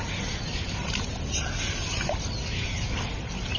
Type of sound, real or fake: real